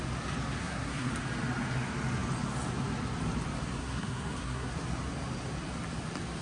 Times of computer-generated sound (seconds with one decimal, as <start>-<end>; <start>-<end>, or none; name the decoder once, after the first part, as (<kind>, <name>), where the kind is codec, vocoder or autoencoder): 0.6-1.1 (codec, SNAC); 3.8-4.7